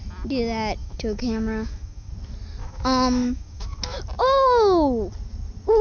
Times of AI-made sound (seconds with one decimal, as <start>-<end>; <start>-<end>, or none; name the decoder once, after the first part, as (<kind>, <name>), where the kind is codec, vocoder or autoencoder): 0.8-2.1 (autoencoder, DAC-VAE); 2.6-4.0